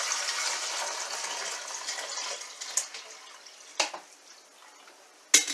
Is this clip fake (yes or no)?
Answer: no